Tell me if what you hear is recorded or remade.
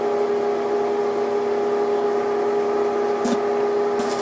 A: recorded